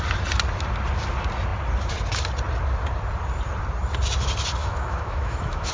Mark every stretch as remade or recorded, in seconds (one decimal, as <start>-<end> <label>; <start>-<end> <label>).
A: 0.0-4.6 recorded; 4.6-5.7 remade